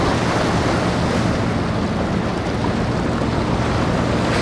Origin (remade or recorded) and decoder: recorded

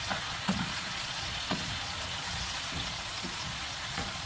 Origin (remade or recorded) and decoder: remade, vocoder, Vocos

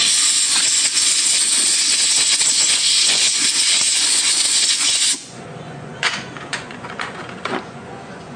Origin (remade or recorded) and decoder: remade, vocoder, Vocos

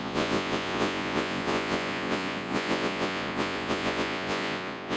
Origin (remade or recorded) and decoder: remade, vocoder, Vocos